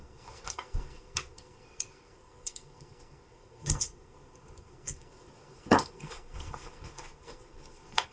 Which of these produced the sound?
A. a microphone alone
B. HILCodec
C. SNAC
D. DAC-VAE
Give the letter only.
C